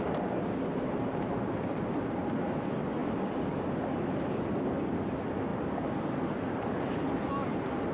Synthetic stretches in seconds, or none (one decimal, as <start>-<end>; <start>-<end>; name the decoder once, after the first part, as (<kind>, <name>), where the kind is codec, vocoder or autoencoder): none